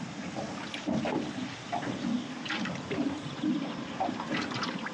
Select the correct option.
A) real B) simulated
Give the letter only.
A